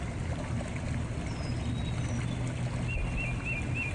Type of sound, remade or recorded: recorded